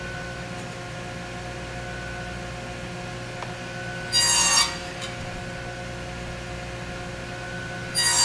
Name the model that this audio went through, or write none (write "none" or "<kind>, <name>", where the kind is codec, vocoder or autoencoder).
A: none